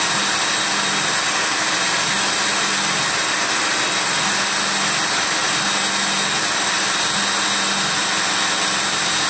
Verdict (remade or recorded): recorded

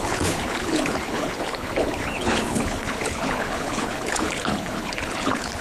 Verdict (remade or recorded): remade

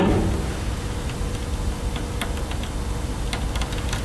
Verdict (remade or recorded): recorded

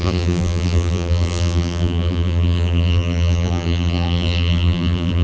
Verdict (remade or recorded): remade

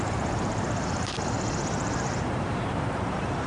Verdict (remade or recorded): remade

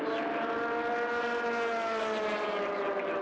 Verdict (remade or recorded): recorded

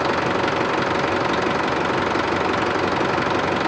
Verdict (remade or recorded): recorded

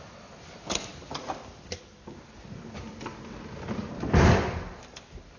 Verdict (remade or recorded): recorded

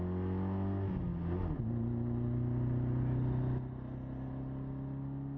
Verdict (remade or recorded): recorded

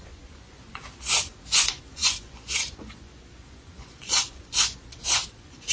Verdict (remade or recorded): remade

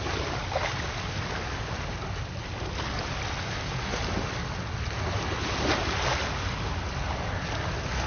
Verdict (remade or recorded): recorded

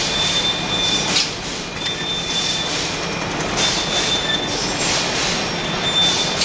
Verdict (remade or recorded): recorded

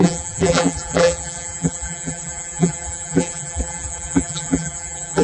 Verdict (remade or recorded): remade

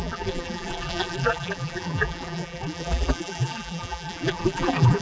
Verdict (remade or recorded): remade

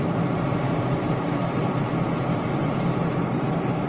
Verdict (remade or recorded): remade